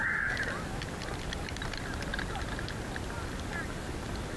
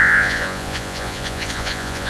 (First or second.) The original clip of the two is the first